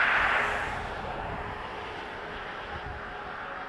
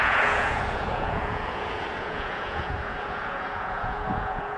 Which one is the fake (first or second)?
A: second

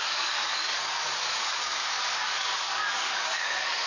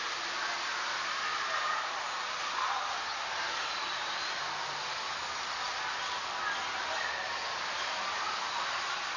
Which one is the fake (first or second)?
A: first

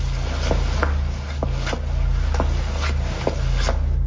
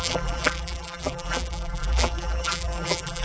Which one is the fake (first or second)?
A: second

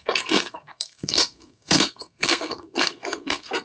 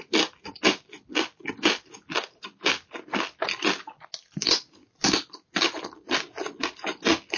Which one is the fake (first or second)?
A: first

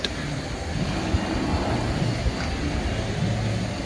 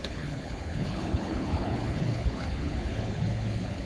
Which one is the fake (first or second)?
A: second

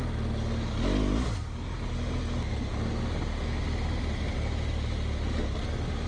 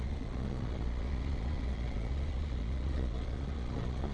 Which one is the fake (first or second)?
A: second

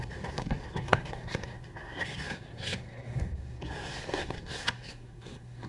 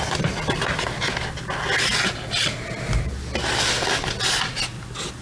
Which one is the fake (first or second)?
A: first